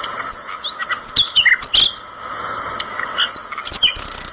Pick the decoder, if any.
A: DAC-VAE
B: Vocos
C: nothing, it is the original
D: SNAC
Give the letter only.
C